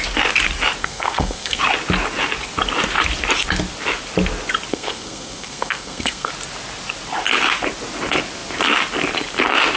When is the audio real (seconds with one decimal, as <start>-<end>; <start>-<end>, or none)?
0.0-0.8; 1.6-4.7; 6.3-9.8